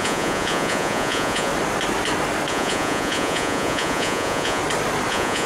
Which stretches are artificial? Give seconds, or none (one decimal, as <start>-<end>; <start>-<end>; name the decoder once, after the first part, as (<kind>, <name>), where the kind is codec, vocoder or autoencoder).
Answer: 0.0-1.5 (vocoder, Vocos); 2.5-4.6; 5.1-5.5